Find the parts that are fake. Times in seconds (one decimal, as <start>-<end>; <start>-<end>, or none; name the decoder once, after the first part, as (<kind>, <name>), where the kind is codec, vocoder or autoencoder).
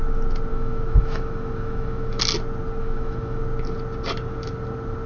0.5-2.2 (autoencoder, DAC-VAE); 2.8-3.4